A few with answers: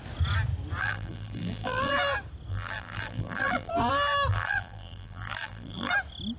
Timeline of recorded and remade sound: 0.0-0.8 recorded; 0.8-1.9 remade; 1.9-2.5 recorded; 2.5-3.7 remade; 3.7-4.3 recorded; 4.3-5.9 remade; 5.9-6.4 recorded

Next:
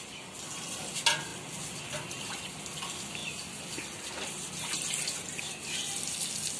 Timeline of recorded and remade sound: 0.0-6.6 recorded

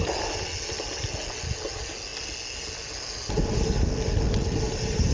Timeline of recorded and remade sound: 0.0-5.1 recorded

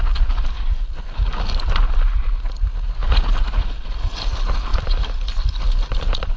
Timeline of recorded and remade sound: 0.0-4.7 recorded; 4.7-6.4 remade

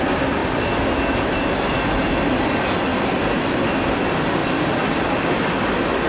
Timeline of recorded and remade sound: 0.0-2.9 recorded; 2.9-4.0 remade; 4.0-6.1 recorded

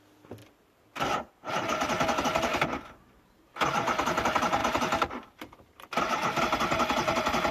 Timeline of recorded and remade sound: 0.0-0.4 recorded; 0.4-1.3 remade; 1.3-2.5 recorded; 2.5-3.5 remade; 3.5-4.6 recorded; 4.6-6.4 remade; 6.4-7.5 recorded

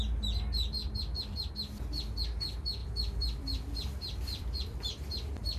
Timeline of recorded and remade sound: 0.0-0.8 recorded; 0.8-1.5 remade; 1.5-2.8 recorded; 2.8-5.1 remade; 5.1-5.6 recorded